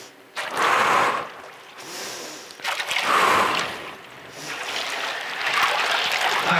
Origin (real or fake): real